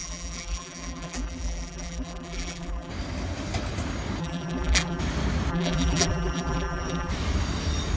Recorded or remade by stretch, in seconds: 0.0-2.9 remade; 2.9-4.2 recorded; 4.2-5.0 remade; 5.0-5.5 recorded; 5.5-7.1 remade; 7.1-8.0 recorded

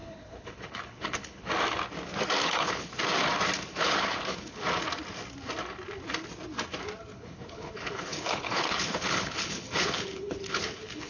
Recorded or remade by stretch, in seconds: 0.0-1.5 remade; 1.5-2.4 recorded; 2.4-2.9 remade; 2.9-3.7 recorded; 3.7-4.6 remade; 4.6-7.1 recorded; 7.1-11.1 remade

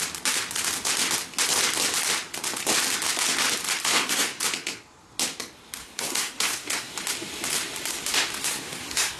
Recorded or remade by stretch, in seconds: 0.0-3.9 recorded; 3.9-4.4 remade; 4.4-5.8 recorded; 5.8-6.9 remade; 6.9-8.4 recorded; 8.4-9.2 remade

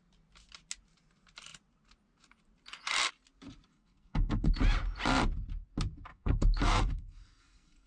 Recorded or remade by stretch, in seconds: 0.0-3.7 recorded; 3.7-4.5 remade; 4.5-6.1 recorded; 6.1-7.9 remade

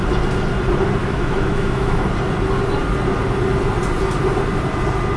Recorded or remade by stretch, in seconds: 0.0-1.0 recorded; 1.0-2.0 remade; 2.0-5.2 recorded

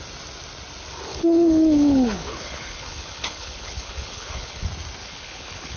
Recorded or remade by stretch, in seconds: 0.0-1.1 recorded; 1.1-4.6 remade; 4.6-5.0 recorded; 5.0-5.8 remade

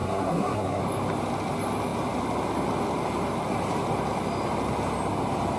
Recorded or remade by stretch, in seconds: 0.0-0.8 remade; 0.8-5.6 recorded

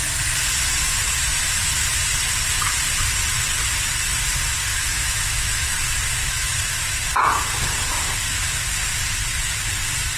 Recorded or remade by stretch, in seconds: 0.0-4.7 recorded; 4.7-5.7 remade; 5.7-6.2 recorded; 6.2-6.8 remade; 6.8-10.2 recorded